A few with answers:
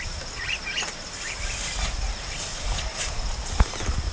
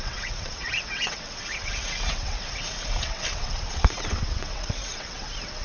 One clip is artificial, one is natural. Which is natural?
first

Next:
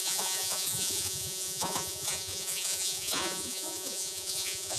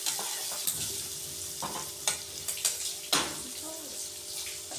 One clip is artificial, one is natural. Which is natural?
second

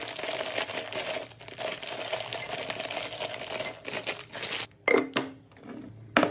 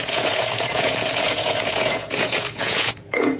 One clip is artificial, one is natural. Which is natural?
first